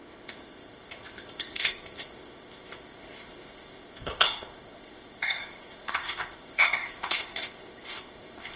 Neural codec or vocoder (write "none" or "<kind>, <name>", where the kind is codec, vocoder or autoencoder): codec, ZipCodec